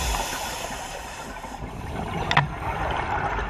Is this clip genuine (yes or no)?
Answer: yes